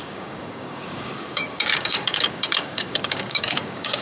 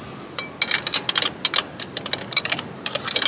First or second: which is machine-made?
first